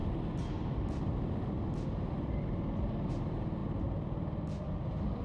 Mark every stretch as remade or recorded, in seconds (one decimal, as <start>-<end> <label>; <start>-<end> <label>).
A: 0.0-5.2 recorded